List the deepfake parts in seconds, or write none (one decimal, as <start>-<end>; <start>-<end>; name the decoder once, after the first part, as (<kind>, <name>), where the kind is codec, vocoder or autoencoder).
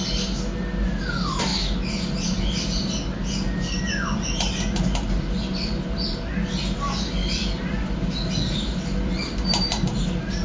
7.2-9.2 (vocoder, BigVGAN v2)